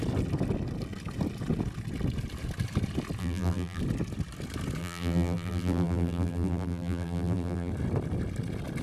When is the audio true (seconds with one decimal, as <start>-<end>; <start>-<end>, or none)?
0.0-3.2; 3.8-4.8; 7.7-8.8